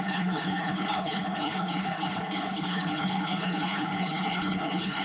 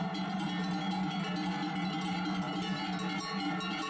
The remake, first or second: first